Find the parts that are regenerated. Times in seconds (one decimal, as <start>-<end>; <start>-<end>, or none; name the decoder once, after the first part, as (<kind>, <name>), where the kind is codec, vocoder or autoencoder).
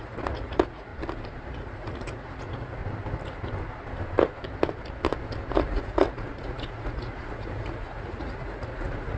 0.0-0.9 (vocoder, Vocos); 1.5-2.8; 5.5-9.2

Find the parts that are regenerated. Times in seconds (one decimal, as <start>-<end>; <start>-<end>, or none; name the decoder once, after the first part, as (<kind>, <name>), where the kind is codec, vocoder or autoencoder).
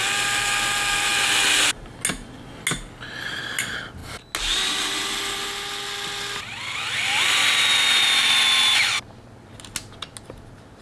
none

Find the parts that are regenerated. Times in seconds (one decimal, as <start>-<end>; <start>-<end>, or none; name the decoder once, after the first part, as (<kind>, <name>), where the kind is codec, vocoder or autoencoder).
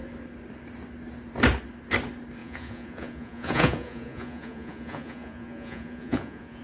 2.4-6.6 (vocoder, Vocos)